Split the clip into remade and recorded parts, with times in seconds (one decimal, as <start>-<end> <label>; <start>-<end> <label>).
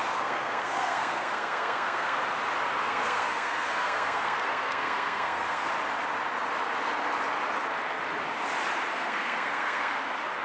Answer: 0.0-2.2 remade; 2.2-2.8 recorded; 2.8-5.7 remade; 5.7-8.9 recorded; 8.9-10.0 remade; 10.0-10.4 recorded